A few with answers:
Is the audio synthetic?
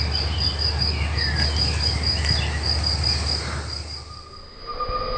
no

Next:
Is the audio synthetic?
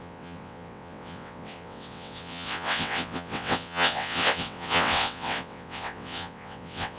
yes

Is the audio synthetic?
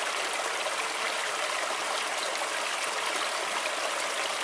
no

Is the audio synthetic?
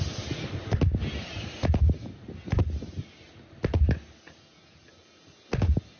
no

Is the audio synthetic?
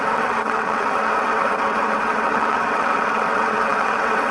yes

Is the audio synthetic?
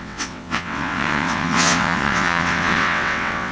yes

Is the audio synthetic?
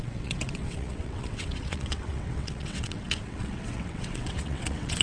yes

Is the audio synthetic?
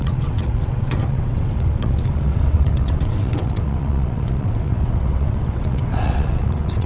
yes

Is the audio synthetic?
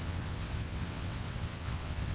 yes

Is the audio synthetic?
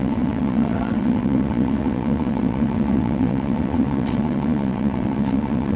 yes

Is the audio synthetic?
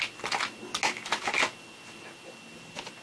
no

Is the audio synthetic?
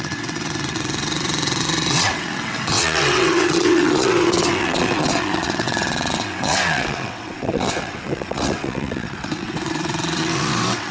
yes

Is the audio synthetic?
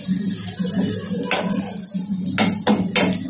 no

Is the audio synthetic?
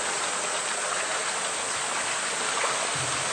no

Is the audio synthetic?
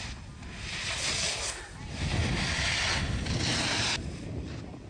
no